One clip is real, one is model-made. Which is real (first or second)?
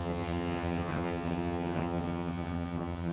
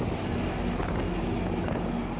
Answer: second